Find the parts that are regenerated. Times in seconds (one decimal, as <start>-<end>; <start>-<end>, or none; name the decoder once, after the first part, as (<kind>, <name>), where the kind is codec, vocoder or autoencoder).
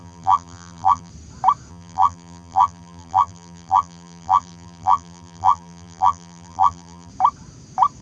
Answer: 0.0-1.1 (vocoder, BigVGAN v2); 1.7-7.1